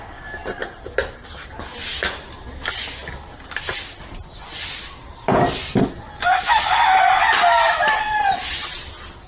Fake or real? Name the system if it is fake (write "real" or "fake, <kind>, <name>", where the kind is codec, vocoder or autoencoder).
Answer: real